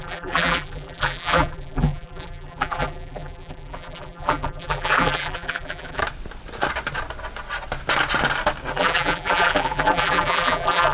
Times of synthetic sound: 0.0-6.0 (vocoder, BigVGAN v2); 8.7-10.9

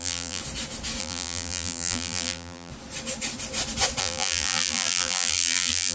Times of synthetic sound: 0.0-0.4 (vocoder, BigVGAN v2); 1.0-2.7; 4.0-5.9

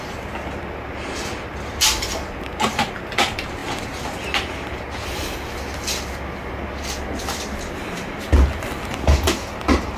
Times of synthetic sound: none

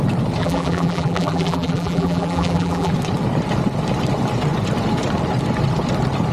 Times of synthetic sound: 0.4-2.9 (vocoder, BigVGAN v2)

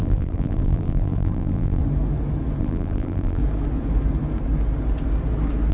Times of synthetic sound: 0.0-1.8 (vocoder, BigVGAN v2); 2.6-3.4